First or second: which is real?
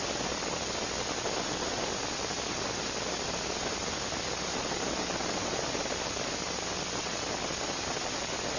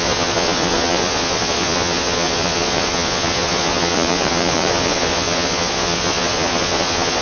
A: first